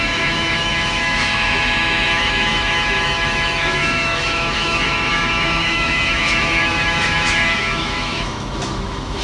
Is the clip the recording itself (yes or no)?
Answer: no